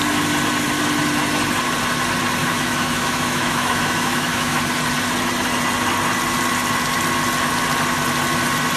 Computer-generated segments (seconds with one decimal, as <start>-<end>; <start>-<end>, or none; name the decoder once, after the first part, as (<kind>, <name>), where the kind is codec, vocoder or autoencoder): 2.4-4.6 (autoencoder, DAC-VAE)